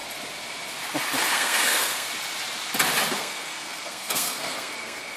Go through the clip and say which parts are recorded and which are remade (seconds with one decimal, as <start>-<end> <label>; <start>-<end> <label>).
0.0-1.3 recorded; 1.3-2.1 remade; 2.1-3.1 recorded; 3.1-5.2 remade